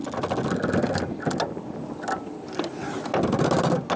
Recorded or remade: recorded